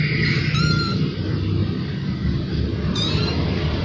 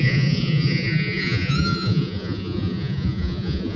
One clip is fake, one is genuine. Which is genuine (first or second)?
first